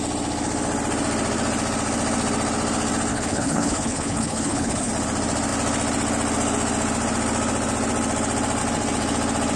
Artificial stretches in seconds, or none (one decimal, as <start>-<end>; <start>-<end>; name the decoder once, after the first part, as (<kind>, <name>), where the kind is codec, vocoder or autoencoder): 3.1-4.9 (codec, HILCodec)